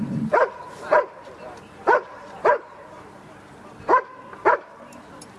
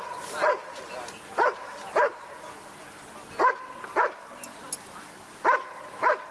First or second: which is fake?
first